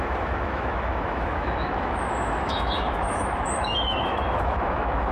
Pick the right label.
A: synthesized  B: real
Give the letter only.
A